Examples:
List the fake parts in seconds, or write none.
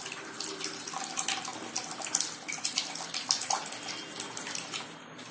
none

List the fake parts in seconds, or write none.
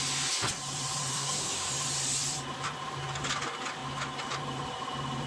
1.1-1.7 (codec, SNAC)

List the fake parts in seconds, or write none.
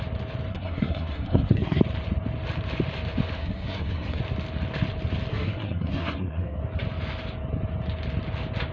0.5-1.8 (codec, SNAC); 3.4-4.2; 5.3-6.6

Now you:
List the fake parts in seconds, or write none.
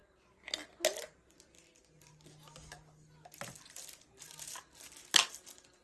none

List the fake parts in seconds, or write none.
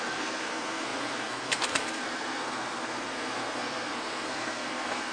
0.0-5.1 (codec, SNAC)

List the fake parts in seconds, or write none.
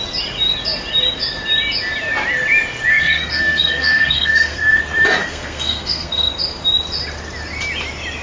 2.9-4.8 (codec, SNAC); 5.2-6.3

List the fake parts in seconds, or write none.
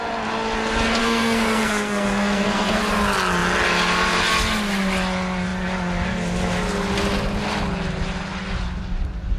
1.0-2.8 (codec, SNAC)